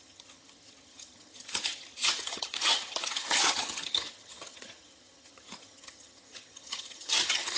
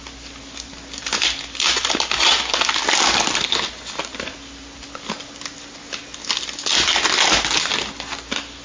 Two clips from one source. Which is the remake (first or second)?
first